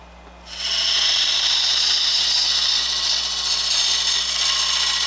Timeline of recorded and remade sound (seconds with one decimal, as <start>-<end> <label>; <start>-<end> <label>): 0.0-5.1 recorded